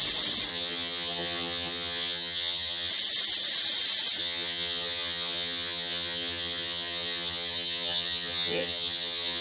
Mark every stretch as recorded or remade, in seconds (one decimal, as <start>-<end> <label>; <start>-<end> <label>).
0.0-0.5 recorded; 0.5-2.9 remade; 2.9-4.2 recorded; 4.2-9.4 remade